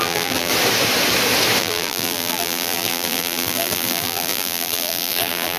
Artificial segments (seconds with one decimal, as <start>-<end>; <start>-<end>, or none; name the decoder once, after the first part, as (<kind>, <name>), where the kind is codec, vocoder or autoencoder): 0.0-0.5 (vocoder, BigVGAN v2); 1.6-5.6